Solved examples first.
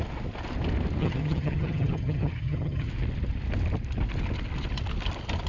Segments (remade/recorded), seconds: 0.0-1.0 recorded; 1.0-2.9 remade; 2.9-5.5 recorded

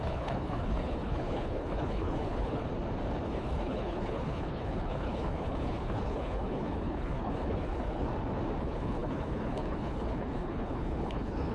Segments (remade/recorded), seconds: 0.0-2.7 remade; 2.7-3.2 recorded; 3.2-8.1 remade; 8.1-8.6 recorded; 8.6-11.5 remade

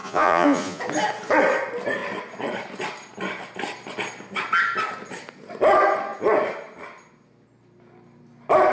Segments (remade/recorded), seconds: 0.0-0.8 remade; 0.8-8.7 recorded

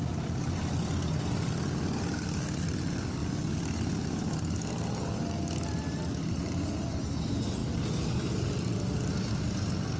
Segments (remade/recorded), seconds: 0.0-10.0 recorded